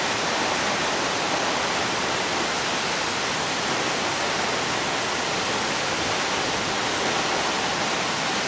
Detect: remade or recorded recorded